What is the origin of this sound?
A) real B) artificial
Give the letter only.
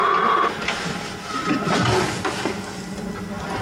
A